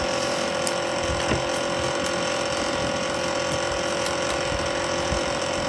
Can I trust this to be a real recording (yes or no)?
yes